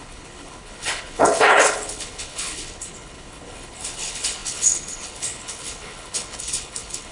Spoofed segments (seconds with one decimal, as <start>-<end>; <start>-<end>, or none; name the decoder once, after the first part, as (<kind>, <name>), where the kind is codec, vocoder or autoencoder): 0.0-7.1 (codec, HILCodec)